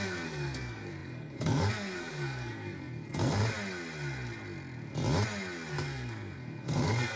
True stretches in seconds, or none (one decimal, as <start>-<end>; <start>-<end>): 3.4-5.7